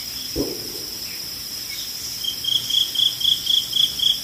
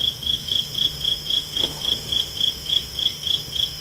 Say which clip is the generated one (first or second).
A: second